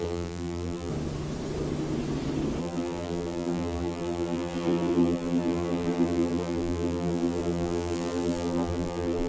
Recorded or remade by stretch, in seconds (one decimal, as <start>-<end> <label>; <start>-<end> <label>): 0.0-0.9 remade; 0.9-2.6 recorded; 2.6-9.3 remade